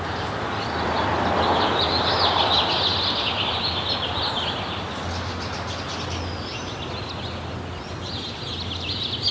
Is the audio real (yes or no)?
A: yes